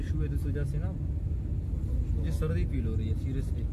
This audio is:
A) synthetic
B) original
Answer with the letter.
B